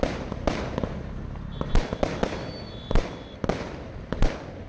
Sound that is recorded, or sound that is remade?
recorded